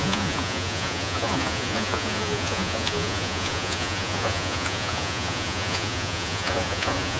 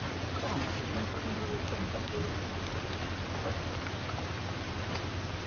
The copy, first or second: first